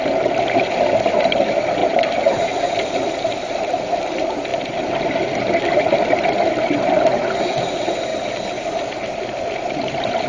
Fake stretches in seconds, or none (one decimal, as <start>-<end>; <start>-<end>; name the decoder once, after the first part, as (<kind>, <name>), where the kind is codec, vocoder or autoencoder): none